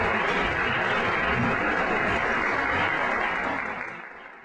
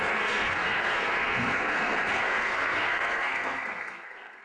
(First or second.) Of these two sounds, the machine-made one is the second